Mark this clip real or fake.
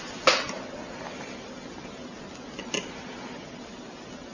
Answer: real